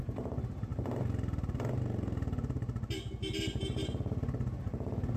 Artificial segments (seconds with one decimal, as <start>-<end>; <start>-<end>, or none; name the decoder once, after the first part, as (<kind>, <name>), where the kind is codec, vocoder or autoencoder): none